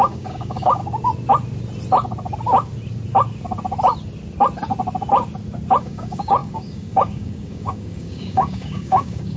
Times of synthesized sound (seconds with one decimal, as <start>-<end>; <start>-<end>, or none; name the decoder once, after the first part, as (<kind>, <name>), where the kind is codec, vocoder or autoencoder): 0.0-0.8 (codec, DAC); 5.8-9.4